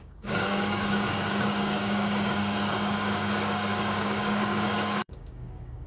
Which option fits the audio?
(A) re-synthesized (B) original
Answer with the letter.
A